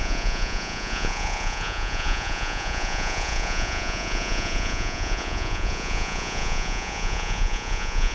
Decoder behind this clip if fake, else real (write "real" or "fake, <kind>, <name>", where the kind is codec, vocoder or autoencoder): fake, vocoder, Vocos